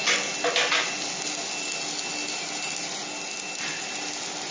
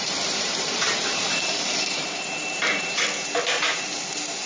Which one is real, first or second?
first